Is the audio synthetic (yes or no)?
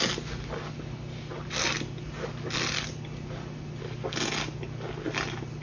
no